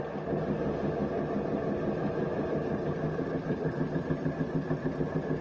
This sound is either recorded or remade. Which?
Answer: remade